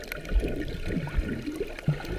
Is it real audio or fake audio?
real